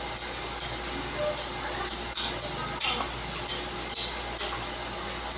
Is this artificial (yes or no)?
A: no